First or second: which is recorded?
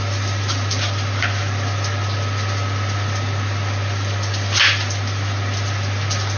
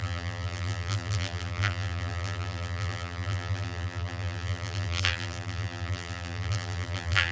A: first